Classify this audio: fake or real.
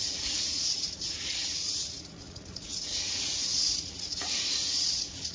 fake